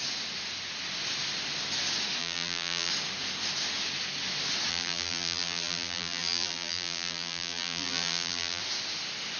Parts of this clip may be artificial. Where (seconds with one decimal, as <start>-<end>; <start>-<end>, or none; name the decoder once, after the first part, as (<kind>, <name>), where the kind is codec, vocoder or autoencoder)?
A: 2.2-2.9 (vocoder, BigVGAN v2); 4.7-8.6